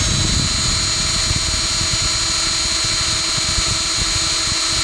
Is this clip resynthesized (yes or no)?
no